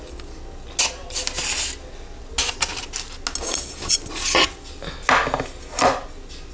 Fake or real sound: real